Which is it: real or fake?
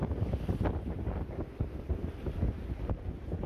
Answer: real